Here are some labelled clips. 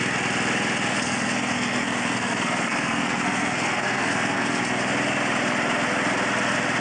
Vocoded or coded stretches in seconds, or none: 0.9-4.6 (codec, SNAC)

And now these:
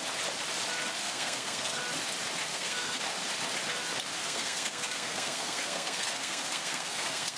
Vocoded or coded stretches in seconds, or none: 1.0-1.8 (codec, SNAC); 2.5-3.0; 4.2-7.4

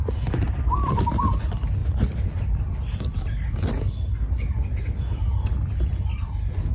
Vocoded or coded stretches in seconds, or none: none